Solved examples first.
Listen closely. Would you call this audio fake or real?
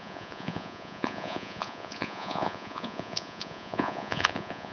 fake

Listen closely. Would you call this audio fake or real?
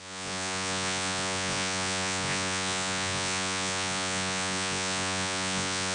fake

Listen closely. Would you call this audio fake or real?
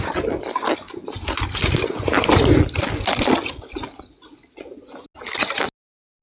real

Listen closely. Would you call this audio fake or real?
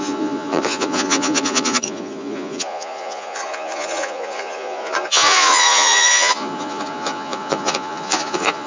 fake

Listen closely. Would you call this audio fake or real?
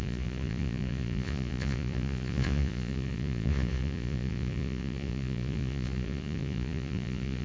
fake